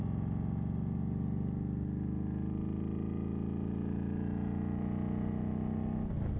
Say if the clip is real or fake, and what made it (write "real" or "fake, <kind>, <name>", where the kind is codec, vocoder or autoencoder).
real